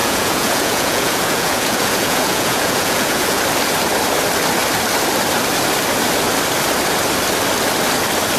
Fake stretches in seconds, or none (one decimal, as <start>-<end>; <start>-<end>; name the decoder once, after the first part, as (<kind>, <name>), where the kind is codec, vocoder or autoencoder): 0.0-3.4 (vocoder, Vocos)